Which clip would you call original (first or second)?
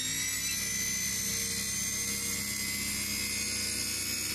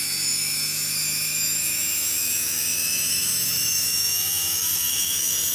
first